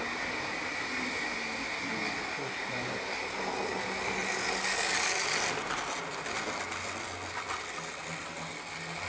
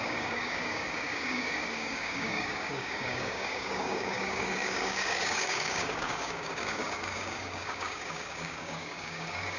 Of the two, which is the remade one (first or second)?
second